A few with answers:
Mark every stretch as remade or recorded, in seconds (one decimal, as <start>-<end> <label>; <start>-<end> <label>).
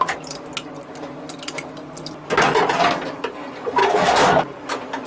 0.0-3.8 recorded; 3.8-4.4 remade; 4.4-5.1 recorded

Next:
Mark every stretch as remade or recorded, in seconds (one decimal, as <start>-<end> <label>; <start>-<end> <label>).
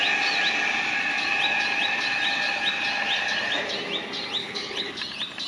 0.0-4.4 recorded; 4.4-4.9 remade; 4.9-5.5 recorded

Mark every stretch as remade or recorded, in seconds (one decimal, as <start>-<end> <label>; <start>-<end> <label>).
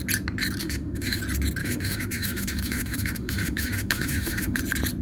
0.0-0.6 recorded; 0.6-1.2 remade; 1.2-1.6 recorded; 1.6-4.6 remade; 4.6-5.0 recorded